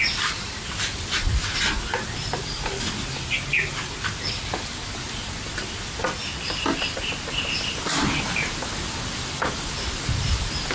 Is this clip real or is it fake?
real